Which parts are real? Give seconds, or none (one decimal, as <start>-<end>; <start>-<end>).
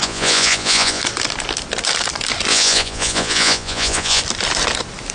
1.0-2.5; 4.2-5.1